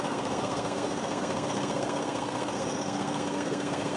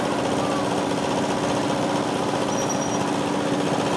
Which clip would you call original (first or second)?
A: second